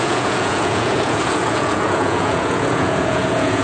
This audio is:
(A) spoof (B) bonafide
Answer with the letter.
A